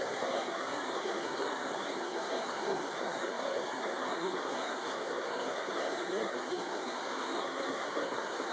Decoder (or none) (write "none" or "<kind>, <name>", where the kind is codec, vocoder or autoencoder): codec, SNAC